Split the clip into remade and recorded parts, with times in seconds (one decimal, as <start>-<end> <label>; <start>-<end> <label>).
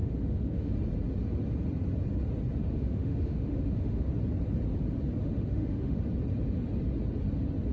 0.0-0.7 remade; 0.7-2.6 recorded; 2.6-4.1 remade; 4.1-5.2 recorded; 5.2-6.0 remade; 6.0-7.7 recorded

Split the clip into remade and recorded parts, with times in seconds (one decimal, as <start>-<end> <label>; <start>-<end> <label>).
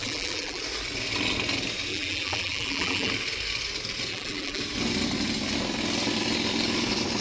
0.0-0.6 remade; 0.6-1.9 recorded; 1.9-3.1 remade; 3.1-4.1 recorded; 4.1-4.6 remade; 4.6-7.2 recorded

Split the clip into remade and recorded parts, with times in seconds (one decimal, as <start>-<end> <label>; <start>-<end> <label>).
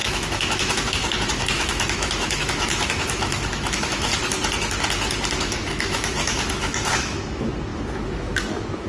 0.0-4.1 remade; 4.1-5.4 recorded; 5.4-8.9 remade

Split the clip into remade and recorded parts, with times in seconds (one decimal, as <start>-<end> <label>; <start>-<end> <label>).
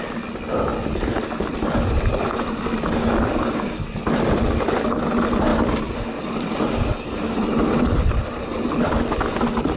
0.0-9.8 recorded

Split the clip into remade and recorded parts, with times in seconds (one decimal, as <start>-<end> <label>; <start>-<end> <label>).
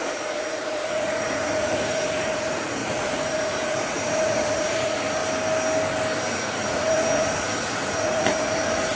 0.0-5.2 remade; 5.2-6.3 recorded; 6.3-9.0 remade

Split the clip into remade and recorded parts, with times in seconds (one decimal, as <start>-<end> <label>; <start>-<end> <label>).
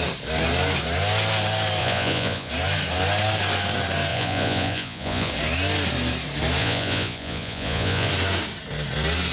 0.0-1.8 recorded; 1.8-2.5 remade; 2.5-4.1 recorded; 4.1-5.3 remade; 5.3-6.6 recorded; 6.6-8.1 remade; 8.1-9.3 recorded